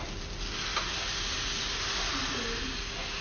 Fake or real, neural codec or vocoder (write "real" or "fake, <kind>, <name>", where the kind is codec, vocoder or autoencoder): real